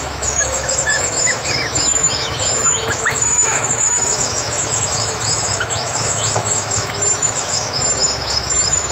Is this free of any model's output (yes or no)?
no